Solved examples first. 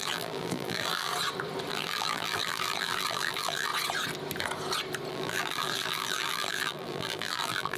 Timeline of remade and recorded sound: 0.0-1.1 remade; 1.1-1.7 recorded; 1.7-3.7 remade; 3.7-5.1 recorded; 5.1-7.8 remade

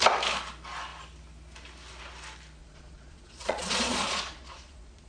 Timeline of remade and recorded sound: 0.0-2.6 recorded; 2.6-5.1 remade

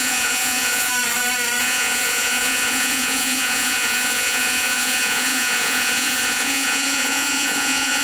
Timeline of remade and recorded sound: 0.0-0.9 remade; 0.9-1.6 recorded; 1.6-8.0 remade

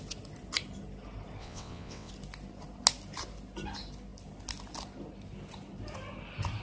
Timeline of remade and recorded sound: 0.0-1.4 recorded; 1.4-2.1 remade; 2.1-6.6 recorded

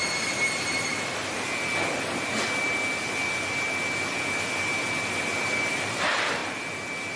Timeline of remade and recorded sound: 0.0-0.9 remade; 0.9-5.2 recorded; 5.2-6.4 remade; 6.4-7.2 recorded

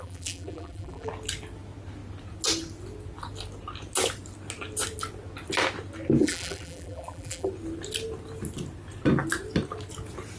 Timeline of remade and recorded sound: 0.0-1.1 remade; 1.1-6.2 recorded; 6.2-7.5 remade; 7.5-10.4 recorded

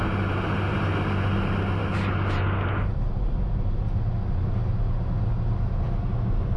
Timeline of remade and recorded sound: 0.0-6.6 recorded